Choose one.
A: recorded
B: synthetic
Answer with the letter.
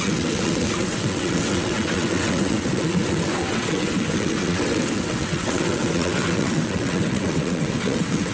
B